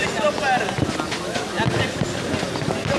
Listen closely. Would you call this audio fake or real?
real